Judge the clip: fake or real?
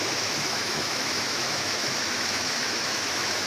fake